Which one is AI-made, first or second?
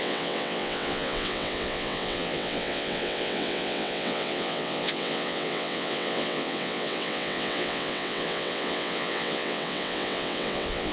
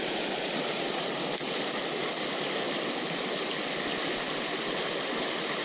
first